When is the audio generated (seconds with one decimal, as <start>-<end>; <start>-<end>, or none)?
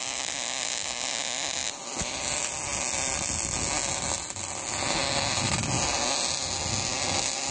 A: none